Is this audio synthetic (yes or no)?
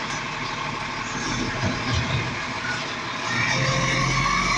no